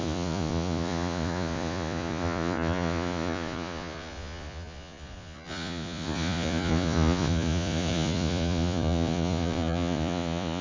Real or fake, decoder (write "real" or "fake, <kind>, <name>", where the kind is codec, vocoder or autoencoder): fake, vocoder, Vocos